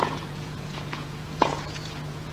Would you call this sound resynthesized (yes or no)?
yes